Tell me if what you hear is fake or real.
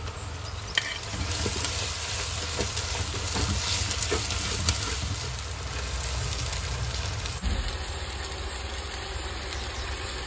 real